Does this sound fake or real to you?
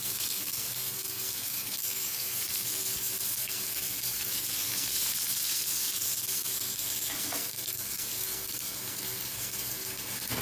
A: fake